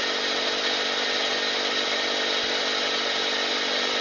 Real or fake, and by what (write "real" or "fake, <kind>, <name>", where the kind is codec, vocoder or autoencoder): real